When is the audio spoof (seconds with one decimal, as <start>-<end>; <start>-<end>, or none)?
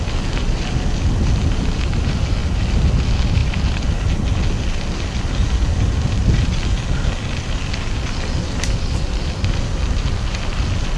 none